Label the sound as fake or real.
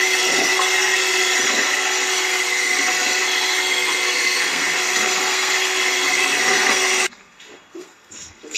fake